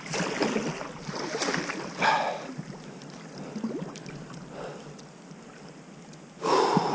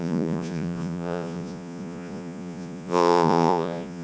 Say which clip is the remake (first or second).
second